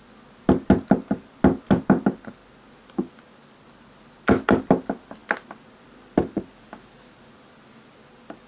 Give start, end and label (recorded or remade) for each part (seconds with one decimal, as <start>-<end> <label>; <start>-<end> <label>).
0.0-8.5 recorded